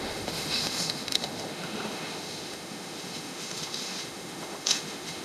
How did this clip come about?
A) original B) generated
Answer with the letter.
B